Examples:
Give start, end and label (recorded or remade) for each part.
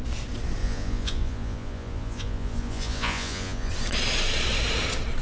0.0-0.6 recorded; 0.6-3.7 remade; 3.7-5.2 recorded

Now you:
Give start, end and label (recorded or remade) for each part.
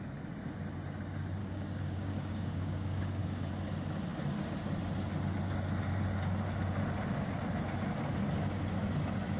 0.0-1.4 recorded; 1.4-3.5 remade; 3.5-9.4 recorded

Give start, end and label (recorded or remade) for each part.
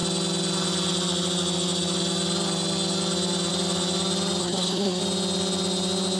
0.0-4.4 recorded; 4.4-5.0 remade; 5.0-6.2 recorded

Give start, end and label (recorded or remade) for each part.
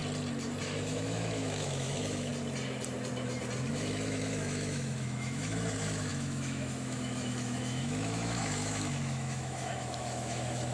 0.0-0.6 recorded; 0.6-2.3 remade; 2.3-3.7 recorded; 3.7-10.7 remade